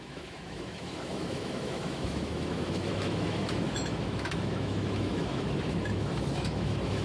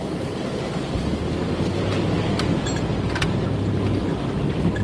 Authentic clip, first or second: second